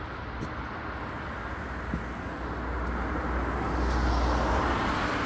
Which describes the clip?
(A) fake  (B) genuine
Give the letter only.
B